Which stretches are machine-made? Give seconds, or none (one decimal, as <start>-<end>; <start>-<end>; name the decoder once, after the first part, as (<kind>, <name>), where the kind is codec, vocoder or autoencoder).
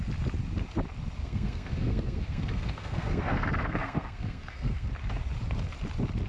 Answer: 1.2-4.9 (codec, SNAC)